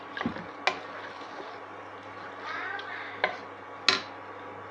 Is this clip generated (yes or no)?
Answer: no